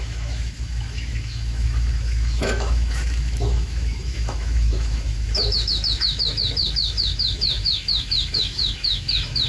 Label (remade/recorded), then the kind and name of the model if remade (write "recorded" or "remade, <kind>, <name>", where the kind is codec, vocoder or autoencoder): remade, autoencoder, DAC-VAE